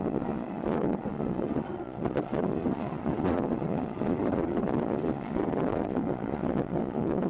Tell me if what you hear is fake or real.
fake